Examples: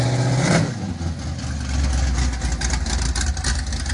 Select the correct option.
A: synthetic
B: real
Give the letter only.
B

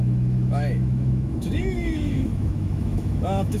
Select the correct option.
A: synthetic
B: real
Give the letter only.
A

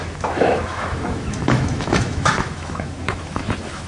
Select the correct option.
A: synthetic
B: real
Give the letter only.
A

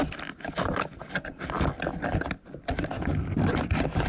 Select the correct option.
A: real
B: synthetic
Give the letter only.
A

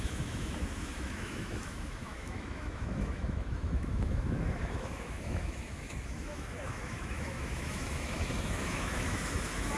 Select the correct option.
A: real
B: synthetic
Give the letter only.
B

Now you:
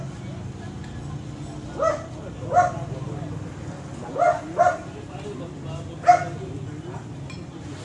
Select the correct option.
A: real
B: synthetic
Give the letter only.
A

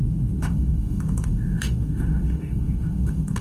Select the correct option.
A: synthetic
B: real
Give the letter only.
A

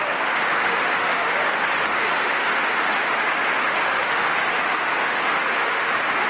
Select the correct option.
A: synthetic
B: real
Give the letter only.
A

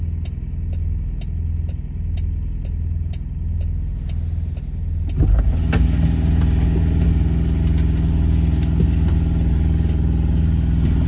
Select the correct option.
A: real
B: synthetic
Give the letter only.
A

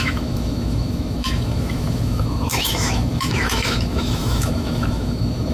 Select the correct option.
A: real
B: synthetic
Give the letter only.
B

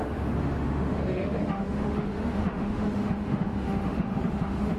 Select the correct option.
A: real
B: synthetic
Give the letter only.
B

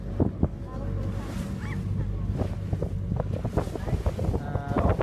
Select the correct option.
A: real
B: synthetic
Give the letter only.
A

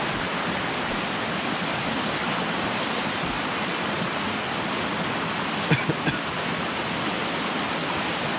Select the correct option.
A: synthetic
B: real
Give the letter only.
B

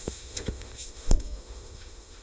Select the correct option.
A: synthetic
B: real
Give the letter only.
A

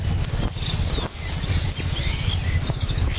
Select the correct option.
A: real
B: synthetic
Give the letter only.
A